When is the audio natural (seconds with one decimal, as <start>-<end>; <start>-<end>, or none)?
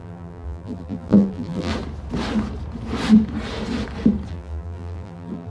1.7-4.3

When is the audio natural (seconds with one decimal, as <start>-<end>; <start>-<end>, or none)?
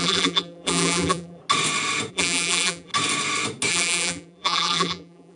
1.4-2.1; 2.9-3.7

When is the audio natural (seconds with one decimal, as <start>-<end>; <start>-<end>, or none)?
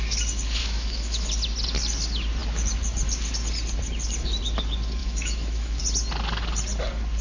0.0-0.6; 1.3-5.0; 5.8-7.2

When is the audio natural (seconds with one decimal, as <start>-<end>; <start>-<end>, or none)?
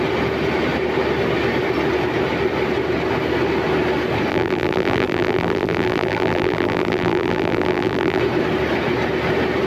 0.0-4.3; 8.2-9.7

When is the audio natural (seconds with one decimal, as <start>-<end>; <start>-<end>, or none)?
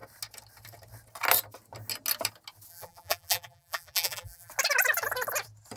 0.0-2.7; 4.5-5.8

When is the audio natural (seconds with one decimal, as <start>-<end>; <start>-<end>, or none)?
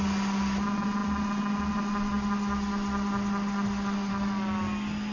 0.0-5.1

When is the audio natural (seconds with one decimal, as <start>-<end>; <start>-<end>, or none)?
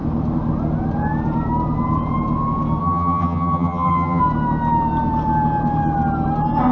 0.0-2.8; 4.2-6.7